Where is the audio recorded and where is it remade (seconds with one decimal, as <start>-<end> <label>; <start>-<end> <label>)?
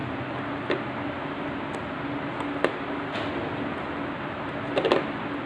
0.0-5.5 recorded